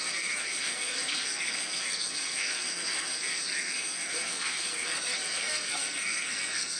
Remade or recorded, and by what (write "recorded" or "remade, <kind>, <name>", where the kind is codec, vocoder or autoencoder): remade, codec, SNAC